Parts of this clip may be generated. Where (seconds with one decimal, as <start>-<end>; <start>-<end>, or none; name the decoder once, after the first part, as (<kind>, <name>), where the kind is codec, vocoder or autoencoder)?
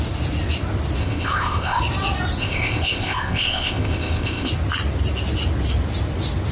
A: 1.0-1.8 (codec, ZipCodec); 2.4-4.5